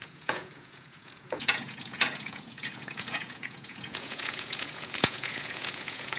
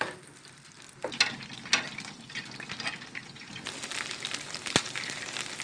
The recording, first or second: second